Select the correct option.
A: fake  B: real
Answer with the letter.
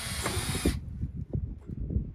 B